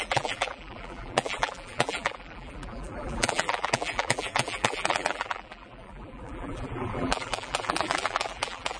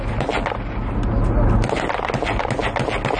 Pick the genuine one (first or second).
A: second